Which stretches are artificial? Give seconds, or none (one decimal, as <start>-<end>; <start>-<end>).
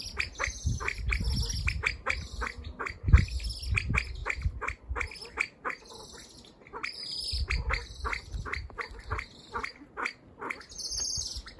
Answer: none